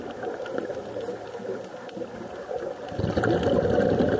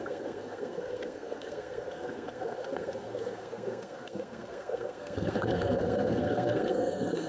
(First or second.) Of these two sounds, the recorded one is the first